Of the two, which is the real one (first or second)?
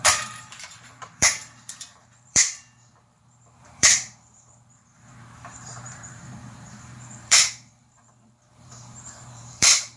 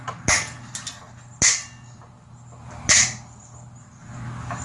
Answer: second